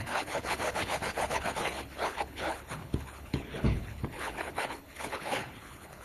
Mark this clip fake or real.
fake